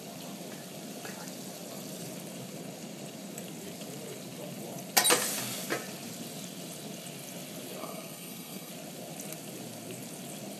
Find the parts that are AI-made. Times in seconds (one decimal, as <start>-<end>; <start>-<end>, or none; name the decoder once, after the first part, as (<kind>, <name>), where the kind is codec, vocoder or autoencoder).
7.8-8.7 (codec, SNAC)